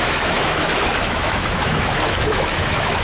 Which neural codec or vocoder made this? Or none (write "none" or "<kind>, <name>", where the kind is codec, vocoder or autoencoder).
autoencoder, DAC-VAE